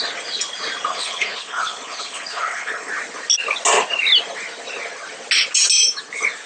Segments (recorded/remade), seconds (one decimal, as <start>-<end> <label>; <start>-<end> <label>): 0.0-0.9 recorded; 0.9-2.9 remade; 2.9-6.5 recorded